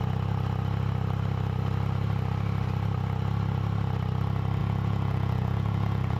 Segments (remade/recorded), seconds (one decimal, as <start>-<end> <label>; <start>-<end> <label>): 0.0-4.6 recorded; 4.6-6.2 remade